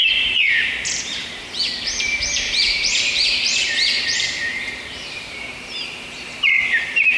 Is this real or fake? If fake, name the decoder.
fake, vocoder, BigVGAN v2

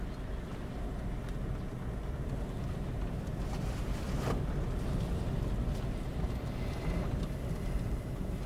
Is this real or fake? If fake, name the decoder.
real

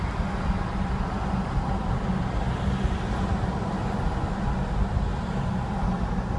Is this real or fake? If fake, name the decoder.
real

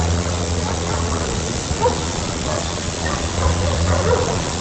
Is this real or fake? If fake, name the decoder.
fake, vocoder, Vocos